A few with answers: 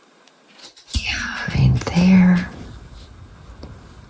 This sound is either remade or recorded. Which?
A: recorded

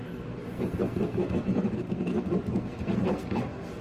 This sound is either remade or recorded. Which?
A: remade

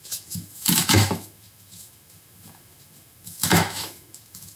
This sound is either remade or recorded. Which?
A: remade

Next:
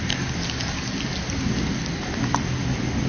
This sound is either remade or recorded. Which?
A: recorded